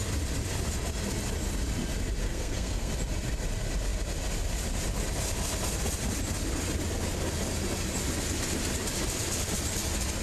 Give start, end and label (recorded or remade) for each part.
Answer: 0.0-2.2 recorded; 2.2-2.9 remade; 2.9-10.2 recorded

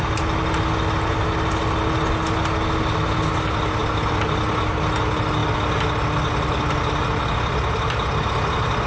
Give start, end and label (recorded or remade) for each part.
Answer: 0.0-8.9 recorded